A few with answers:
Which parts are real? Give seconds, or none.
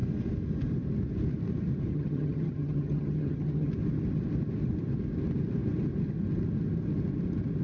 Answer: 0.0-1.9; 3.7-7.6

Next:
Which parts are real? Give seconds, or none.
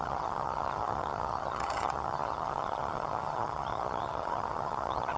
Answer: none